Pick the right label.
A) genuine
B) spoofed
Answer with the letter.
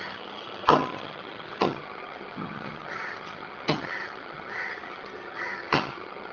B